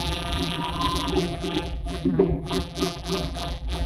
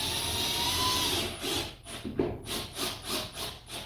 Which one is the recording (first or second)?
second